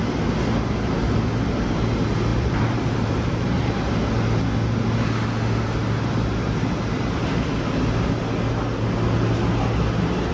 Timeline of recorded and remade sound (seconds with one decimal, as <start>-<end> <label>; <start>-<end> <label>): 0.0-2.3 recorded; 2.3-3.7 remade; 3.7-10.3 recorded